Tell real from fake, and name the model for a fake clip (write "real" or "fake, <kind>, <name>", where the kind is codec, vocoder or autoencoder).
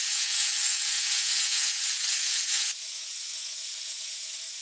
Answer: fake, vocoder, Vocos